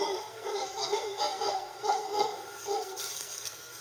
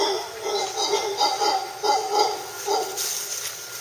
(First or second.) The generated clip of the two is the first